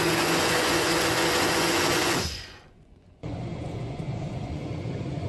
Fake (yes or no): yes